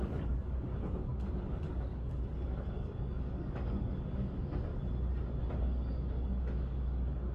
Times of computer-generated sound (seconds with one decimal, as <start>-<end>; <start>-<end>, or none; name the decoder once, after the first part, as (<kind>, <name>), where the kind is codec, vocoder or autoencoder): 0.0-4.7 (codec, DAC); 5.4-7.3